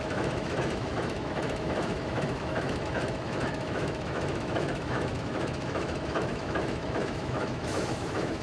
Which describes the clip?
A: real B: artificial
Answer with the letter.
B